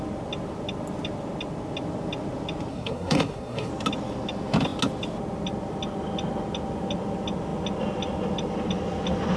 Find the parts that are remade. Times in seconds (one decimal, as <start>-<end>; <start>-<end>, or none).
2.7-3.7